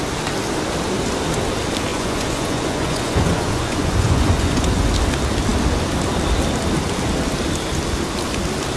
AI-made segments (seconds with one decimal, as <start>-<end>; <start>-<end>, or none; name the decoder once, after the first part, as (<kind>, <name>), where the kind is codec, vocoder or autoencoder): 1.9-4.9 (vocoder, Vocos)